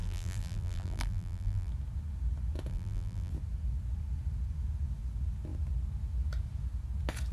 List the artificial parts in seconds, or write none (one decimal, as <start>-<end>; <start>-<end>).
0.0-1.7; 2.7-3.3